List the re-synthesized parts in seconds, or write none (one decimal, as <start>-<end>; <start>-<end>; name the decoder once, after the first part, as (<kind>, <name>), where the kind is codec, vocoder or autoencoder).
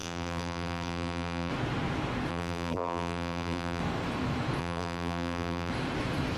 0.0-1.5 (vocoder, BigVGAN v2); 2.3-3.8; 4.6-5.7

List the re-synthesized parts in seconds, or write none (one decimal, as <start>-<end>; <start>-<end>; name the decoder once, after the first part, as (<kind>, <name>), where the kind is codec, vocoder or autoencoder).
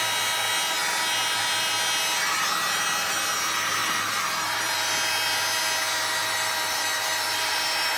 3.8-4.9 (vocoder, BigVGAN v2); 6.2-8.0